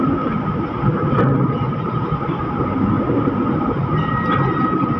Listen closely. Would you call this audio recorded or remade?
recorded